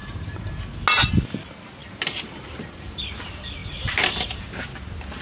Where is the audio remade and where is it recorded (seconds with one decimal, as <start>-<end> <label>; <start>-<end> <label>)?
0.0-0.6 remade; 0.6-1.8 recorded; 1.8-3.0 remade; 3.0-3.6 recorded; 3.6-4.4 remade; 4.4-5.2 recorded